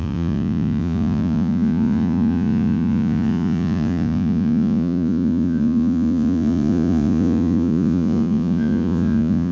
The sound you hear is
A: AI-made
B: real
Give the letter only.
A